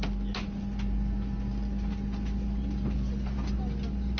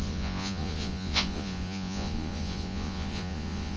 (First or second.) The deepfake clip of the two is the second